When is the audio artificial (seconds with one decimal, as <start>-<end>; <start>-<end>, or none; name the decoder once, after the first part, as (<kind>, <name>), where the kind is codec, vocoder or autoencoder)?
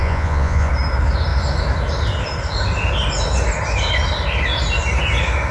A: 0.0-0.7 (vocoder, Vocos)